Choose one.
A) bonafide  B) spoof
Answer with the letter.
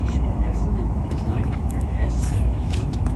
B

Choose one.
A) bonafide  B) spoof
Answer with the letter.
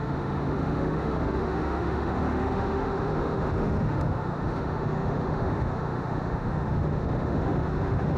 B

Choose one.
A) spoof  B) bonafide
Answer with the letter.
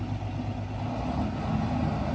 B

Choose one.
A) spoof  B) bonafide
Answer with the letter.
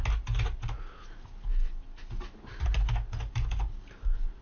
B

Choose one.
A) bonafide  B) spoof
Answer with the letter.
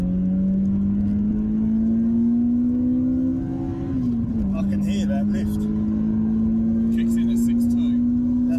A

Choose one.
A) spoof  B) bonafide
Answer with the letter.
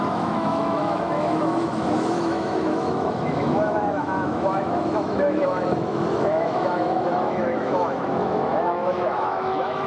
A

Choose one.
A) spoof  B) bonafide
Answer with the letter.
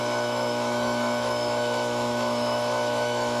A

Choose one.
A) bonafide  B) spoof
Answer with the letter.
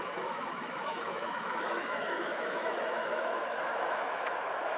B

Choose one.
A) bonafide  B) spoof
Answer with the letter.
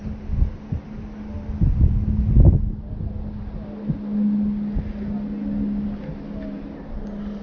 A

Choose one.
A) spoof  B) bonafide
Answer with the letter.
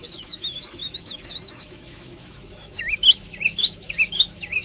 A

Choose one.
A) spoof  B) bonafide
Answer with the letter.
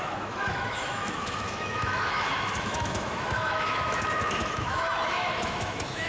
A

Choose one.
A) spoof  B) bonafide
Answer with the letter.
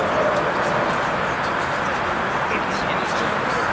B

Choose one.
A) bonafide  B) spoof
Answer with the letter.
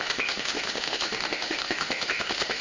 B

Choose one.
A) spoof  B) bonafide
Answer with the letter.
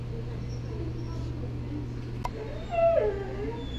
B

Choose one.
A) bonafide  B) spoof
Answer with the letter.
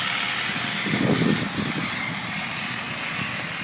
A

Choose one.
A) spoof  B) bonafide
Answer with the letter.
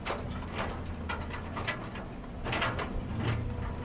B